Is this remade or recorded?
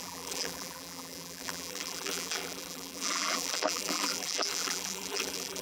remade